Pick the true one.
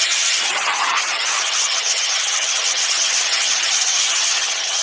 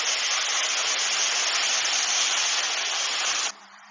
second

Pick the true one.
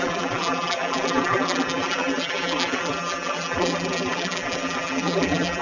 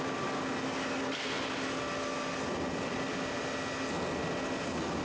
second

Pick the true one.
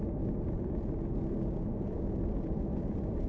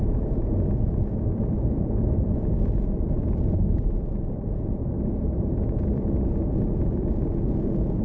first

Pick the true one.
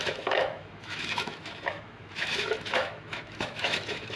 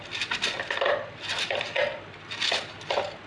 second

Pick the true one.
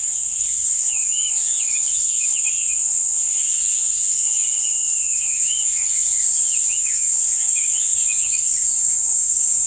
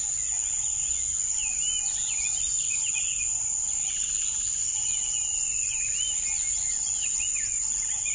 second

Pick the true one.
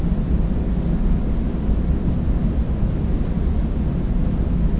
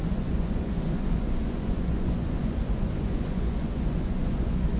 first